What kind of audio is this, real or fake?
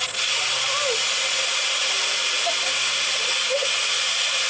real